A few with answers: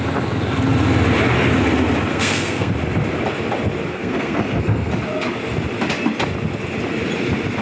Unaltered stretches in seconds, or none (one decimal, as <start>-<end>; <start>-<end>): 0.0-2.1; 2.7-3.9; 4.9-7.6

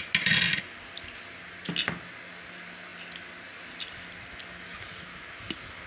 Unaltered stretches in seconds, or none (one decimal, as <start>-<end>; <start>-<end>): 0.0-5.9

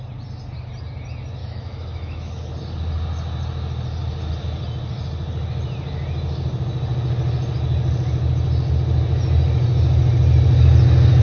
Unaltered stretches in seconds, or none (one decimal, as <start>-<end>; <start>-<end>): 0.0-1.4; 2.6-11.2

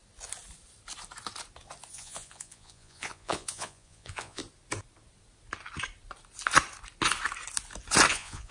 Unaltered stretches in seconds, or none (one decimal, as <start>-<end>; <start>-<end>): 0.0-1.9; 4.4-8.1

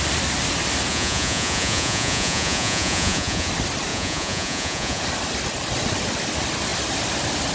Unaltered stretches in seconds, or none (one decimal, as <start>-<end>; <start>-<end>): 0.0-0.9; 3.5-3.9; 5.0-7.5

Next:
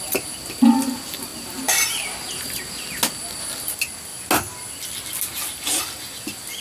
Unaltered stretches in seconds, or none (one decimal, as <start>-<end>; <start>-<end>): 0.0-6.6